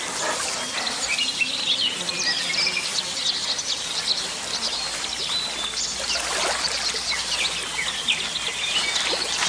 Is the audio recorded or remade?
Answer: recorded